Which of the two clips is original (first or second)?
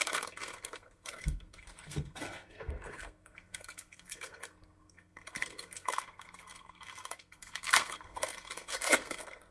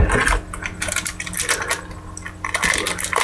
second